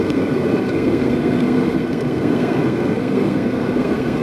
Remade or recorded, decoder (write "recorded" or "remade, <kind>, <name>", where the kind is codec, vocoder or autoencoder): remade, codec, SNAC